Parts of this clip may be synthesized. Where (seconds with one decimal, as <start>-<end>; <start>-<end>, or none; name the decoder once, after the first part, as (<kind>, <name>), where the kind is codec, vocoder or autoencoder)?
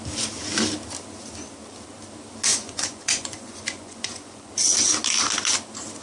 2.5-4.5 (vocoder, Vocos)